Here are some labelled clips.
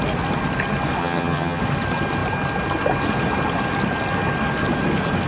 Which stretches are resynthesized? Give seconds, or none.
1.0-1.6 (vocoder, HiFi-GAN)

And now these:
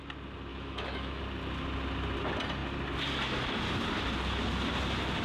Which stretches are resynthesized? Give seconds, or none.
0.5-1.2 (autoencoder, DAC-VAE)

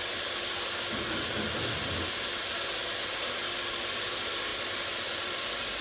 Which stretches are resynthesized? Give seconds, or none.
4.5-5.3 (vocoder, BigVGAN v2)

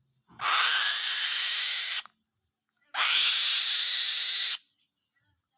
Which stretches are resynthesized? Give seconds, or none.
2.6-3.3 (autoencoder, DAC-VAE)